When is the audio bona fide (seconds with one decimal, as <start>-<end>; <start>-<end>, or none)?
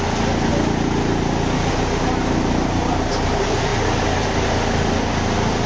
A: 0.0-5.7